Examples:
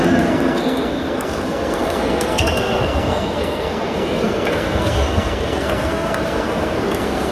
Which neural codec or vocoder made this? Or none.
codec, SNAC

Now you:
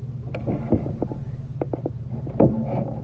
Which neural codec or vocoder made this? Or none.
none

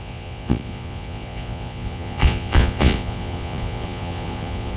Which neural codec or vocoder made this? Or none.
vocoder, Vocos